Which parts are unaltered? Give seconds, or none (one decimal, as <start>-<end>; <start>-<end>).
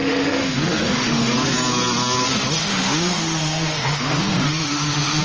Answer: 1.3-2.6